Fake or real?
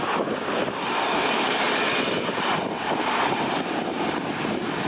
real